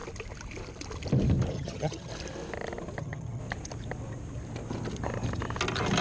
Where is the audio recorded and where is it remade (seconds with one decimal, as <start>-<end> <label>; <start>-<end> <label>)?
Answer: 0.0-1.5 recorded; 1.5-2.1 remade; 2.1-3.0 recorded; 3.0-3.4 remade; 3.4-6.0 recorded